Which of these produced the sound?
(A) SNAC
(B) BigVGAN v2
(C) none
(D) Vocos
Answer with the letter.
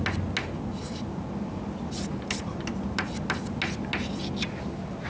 C